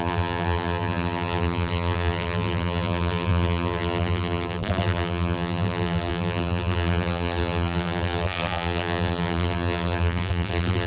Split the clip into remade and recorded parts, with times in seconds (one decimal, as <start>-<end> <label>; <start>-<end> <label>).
0.0-10.9 remade